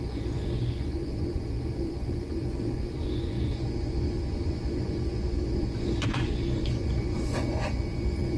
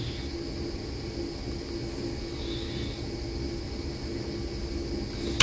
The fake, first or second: first